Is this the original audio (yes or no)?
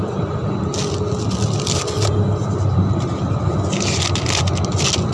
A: yes